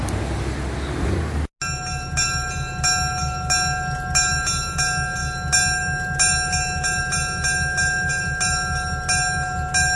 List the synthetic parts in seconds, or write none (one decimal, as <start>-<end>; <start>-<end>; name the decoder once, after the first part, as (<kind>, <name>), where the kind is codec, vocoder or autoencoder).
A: none